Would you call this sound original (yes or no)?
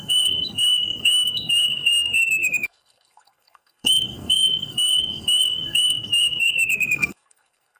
no